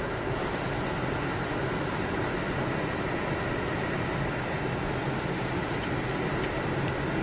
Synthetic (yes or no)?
no